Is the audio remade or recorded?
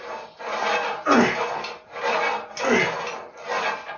recorded